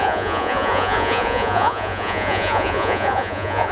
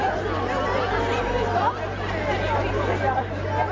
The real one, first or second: second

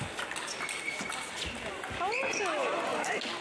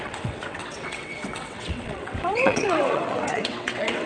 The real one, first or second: first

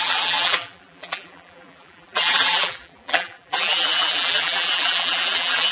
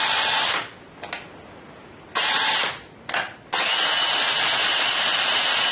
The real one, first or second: second